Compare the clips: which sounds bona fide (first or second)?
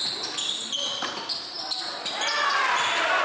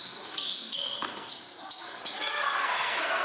first